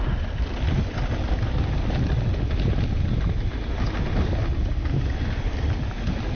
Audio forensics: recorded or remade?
recorded